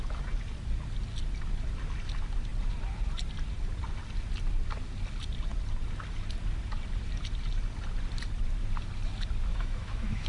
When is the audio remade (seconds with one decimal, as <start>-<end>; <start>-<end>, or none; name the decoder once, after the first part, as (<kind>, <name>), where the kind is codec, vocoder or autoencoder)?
9.5-10.3 (autoencoder, DAC-VAE)

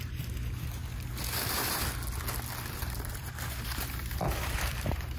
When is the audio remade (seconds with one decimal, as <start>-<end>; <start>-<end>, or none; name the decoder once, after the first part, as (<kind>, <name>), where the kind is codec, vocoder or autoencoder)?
0.0-0.8 (vocoder, BigVGAN v2); 2.7-5.2

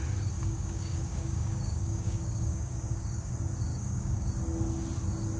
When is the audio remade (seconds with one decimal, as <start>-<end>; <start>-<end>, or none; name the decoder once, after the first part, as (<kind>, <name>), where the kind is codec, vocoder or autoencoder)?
0.4-3.3 (codec, DAC); 3.7-4.3

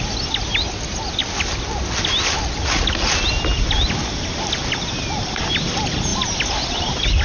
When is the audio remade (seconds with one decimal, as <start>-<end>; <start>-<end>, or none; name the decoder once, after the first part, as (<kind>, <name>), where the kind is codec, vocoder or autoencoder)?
none

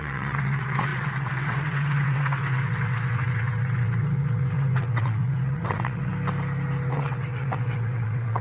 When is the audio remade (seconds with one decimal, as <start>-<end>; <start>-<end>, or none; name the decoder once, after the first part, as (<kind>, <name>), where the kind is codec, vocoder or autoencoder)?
0.0-6.1 (vocoder, WaveNeXt); 6.9-8.4

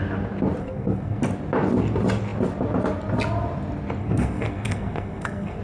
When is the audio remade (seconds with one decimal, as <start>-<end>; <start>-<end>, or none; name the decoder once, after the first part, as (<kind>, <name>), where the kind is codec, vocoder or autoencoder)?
0.6-1.2 (codec, SNAC); 4.0-5.6

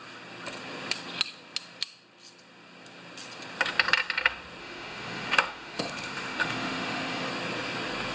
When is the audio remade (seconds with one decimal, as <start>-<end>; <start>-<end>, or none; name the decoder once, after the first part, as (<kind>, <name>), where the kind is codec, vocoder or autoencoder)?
4.6-7.3 (autoencoder, DAC-VAE)

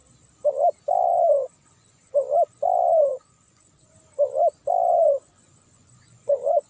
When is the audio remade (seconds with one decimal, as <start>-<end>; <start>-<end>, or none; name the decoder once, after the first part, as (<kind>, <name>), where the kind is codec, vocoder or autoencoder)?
1.1-2.1 (vocoder, Vocos); 3.1-3.9; 4.9-6.7